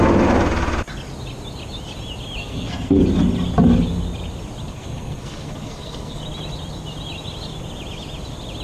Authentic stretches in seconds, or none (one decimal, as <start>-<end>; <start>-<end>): 0.0-2.4; 3.0-4.7; 6.2-8.6